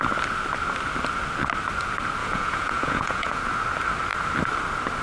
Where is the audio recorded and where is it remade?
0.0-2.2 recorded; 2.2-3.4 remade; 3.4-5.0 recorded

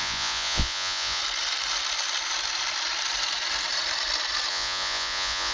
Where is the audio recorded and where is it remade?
0.0-1.2 remade; 1.2-4.5 recorded; 4.5-5.5 remade

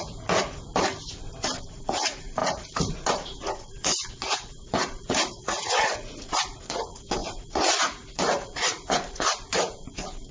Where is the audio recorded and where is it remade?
0.0-0.7 remade; 0.7-1.7 recorded; 1.7-10.3 remade

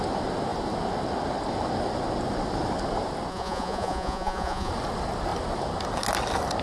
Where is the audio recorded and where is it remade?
0.0-3.3 recorded; 3.3-4.7 remade; 4.7-6.6 recorded

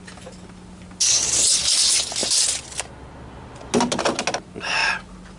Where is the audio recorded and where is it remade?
0.0-5.4 recorded